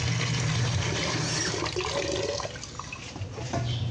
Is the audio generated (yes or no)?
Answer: no